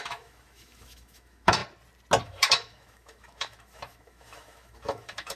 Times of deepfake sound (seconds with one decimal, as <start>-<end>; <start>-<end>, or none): 0.0-1.6; 2.2-5.4